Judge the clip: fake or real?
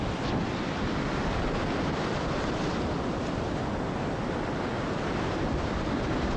fake